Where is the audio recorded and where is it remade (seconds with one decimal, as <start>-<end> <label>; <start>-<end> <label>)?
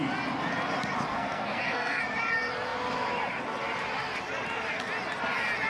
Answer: 0.0-1.1 recorded; 1.1-2.0 remade; 2.0-5.7 recorded